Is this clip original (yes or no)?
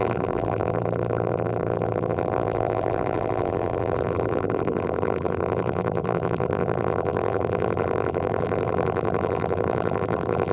no